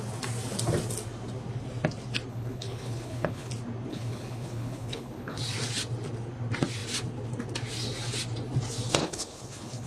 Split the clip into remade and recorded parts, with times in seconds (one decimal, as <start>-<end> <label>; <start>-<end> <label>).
0.0-2.3 recorded; 2.3-3.5 remade; 3.5-3.9 recorded; 3.9-5.4 remade; 5.4-9.0 recorded; 9.0-9.9 remade